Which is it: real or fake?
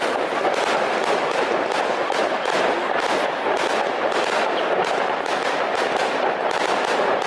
real